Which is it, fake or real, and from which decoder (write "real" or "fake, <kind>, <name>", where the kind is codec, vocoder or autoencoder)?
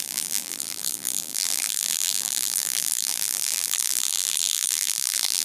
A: fake, vocoder, BigVGAN v2